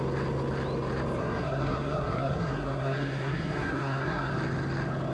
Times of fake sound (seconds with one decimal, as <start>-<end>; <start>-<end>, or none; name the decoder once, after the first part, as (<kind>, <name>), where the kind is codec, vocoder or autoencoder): 1.2-4.3 (codec, SNAC)